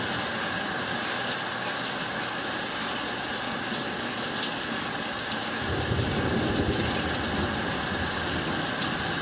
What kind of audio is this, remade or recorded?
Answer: recorded